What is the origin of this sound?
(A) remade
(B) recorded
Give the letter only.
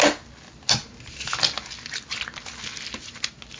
B